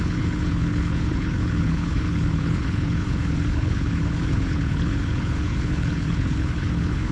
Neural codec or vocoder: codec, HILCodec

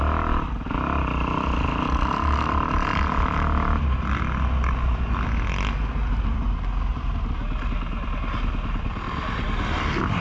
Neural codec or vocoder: none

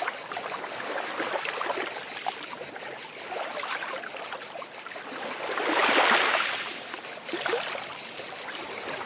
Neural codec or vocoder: none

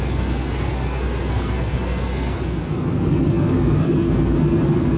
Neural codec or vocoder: codec, SNAC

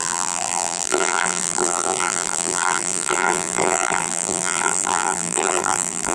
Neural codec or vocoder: vocoder, BigVGAN v2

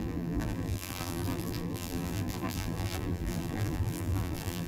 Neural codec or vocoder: vocoder, BigVGAN v2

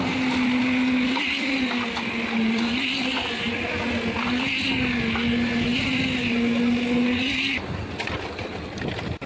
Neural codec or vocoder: none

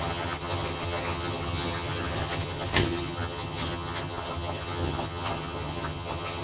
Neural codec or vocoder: vocoder, HiFi-GAN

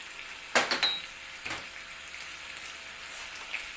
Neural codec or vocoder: none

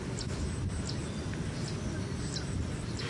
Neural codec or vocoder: none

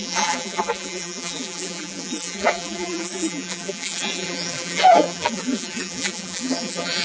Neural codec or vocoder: vocoder, BigVGAN v2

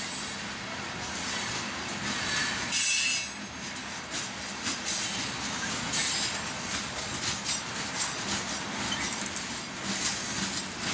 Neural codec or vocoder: none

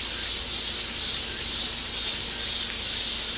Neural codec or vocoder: none